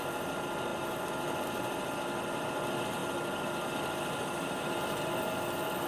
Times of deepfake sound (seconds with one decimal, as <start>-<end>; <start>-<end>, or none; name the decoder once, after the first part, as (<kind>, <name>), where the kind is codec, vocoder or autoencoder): none